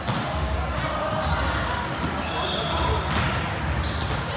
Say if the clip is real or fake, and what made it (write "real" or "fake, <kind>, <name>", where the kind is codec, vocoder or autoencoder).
real